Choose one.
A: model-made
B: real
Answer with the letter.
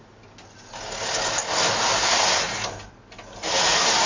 B